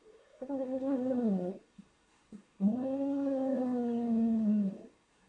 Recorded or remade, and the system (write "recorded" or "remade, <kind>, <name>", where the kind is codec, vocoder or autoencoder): remade, codec, SNAC